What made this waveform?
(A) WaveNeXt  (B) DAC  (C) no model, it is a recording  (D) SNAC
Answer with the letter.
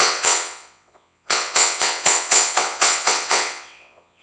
A